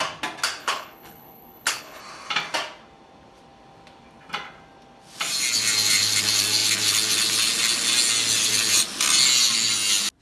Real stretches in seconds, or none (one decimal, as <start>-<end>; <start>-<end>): 0.0-0.6; 2.0-10.2